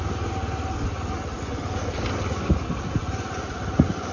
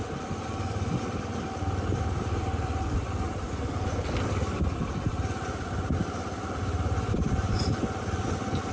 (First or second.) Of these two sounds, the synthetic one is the second